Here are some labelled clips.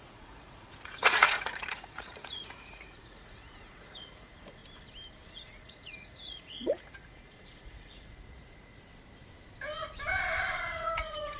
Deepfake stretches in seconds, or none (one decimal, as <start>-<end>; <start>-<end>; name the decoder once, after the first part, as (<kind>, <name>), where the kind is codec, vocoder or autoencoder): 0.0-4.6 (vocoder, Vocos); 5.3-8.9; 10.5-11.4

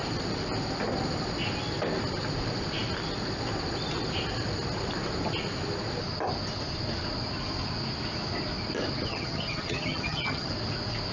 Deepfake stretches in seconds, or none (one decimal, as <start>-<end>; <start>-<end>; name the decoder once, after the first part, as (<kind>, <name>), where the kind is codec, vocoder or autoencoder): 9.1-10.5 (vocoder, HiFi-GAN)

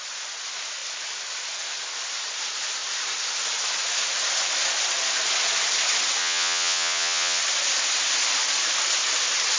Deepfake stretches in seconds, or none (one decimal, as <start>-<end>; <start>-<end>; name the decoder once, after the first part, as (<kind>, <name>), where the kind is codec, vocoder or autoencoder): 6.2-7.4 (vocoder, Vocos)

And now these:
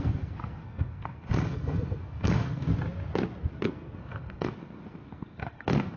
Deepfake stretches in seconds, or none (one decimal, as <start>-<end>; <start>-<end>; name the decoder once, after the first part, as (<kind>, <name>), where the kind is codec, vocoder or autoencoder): 0.0-2.7 (codec, SNAC); 3.5-6.0